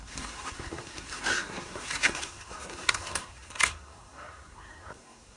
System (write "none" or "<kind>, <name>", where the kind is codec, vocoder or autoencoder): codec, SNAC